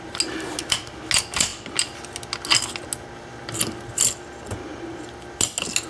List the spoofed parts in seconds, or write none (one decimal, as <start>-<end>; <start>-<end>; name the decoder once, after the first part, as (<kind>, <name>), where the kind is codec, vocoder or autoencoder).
none